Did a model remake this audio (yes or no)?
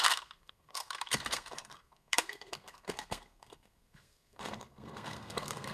yes